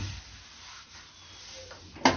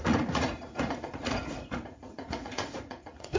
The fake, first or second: second